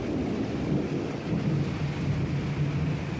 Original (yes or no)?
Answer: yes